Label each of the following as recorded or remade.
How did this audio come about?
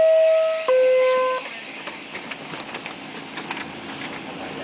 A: recorded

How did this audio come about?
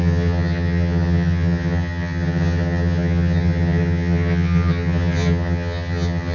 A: remade